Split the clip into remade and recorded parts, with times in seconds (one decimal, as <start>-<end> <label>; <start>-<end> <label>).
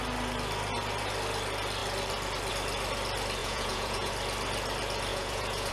0.0-3.4 recorded; 3.4-4.1 remade; 4.1-5.1 recorded; 5.1-5.7 remade